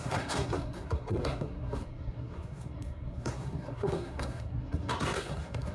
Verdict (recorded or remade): remade